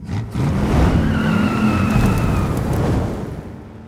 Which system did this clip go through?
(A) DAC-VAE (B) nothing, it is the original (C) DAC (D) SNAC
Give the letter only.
B